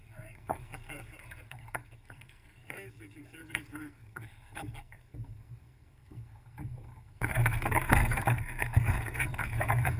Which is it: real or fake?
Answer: fake